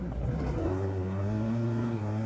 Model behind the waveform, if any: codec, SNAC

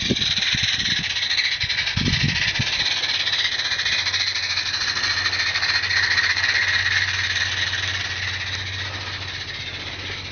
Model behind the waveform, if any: none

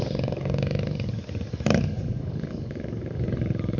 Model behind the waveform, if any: codec, DAC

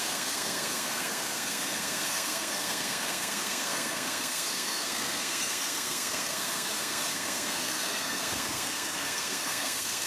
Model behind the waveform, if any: codec, SNAC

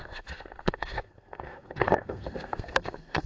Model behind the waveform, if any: codec, SNAC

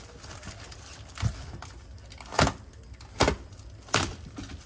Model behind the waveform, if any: none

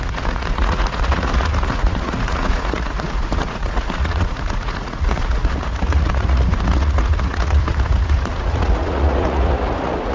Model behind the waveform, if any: vocoder, Vocos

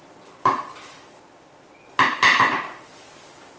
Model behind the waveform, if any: none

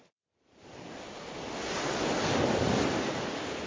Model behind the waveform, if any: none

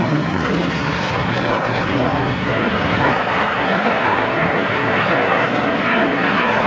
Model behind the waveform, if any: codec, SNAC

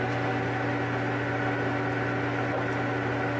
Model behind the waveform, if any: none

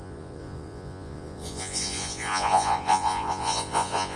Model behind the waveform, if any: vocoder, Vocos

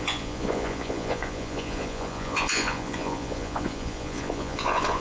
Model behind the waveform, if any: vocoder, Vocos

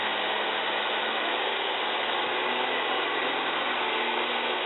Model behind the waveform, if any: none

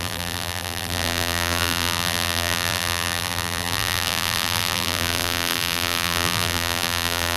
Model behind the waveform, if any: vocoder, BigVGAN v2